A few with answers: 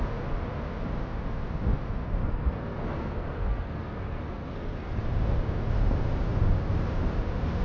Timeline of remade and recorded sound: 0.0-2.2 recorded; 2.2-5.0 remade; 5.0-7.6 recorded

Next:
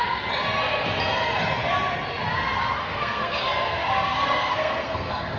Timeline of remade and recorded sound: 0.0-2.8 recorded; 2.8-5.4 remade

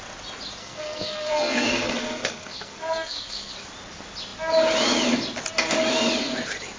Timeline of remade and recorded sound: 0.0-0.6 recorded; 0.6-3.5 remade; 3.5-6.8 recorded

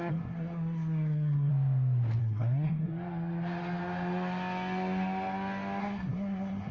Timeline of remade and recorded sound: 0.0-1.5 remade; 1.5-2.2 recorded; 2.2-2.9 remade; 2.9-5.8 recorded; 5.8-6.7 remade

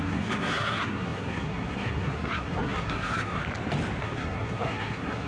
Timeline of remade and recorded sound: 0.0-3.4 remade; 3.4-4.0 recorded; 4.0-5.3 remade